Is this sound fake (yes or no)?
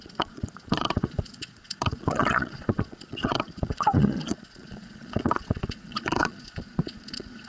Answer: yes